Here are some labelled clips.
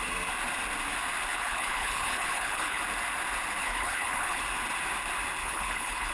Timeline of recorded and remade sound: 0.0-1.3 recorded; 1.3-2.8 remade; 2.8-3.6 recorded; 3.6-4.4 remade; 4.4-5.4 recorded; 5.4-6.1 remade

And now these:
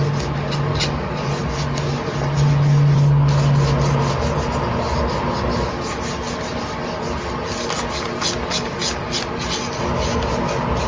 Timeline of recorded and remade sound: 0.0-10.9 recorded